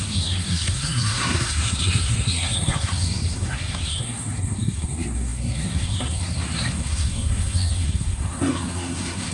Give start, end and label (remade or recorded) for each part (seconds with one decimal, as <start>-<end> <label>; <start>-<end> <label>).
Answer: 0.0-9.3 remade